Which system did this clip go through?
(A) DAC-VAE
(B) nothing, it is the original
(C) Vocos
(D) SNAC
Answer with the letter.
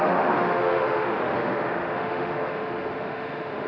A